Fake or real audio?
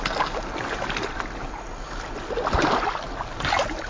real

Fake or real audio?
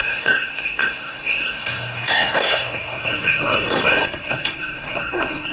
fake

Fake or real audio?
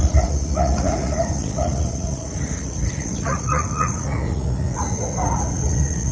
fake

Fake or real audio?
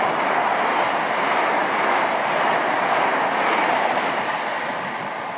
real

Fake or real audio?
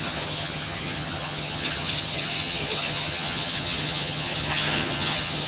fake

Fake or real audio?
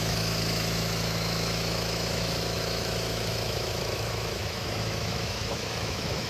fake